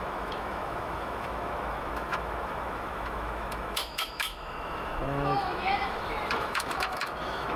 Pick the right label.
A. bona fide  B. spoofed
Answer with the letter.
B